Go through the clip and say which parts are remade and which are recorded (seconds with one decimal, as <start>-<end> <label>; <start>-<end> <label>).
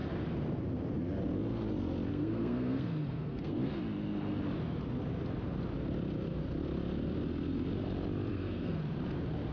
0.0-2.1 recorded; 2.1-3.8 remade; 3.8-8.3 recorded; 8.3-8.8 remade; 8.8-9.5 recorded